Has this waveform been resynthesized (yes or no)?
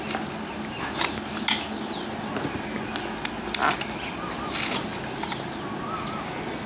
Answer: no